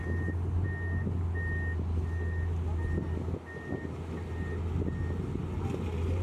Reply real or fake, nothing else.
real